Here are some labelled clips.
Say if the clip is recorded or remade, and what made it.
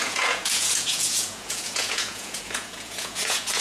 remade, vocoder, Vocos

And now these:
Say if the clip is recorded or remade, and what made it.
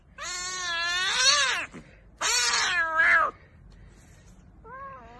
recorded